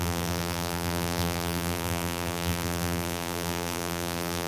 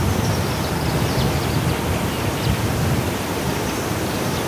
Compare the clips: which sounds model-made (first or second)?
first